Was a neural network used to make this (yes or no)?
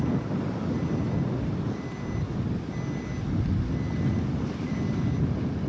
no